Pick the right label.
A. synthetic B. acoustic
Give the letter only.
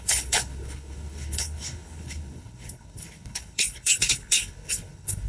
A